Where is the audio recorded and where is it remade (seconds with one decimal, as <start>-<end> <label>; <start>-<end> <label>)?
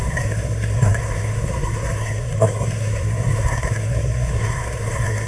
0.0-5.3 remade